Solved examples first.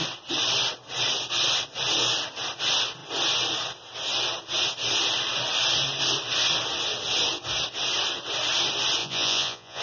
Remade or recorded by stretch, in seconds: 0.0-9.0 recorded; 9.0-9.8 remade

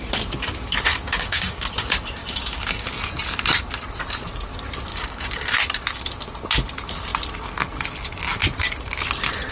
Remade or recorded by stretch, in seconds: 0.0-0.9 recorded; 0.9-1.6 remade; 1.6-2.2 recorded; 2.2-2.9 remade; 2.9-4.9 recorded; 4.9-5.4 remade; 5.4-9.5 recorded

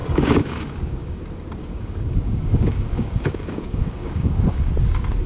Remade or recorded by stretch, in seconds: 0.0-1.2 remade; 1.2-1.6 recorded; 1.6-4.7 remade; 4.7-5.3 recorded

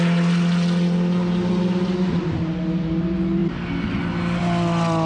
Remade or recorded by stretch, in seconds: 0.0-5.1 recorded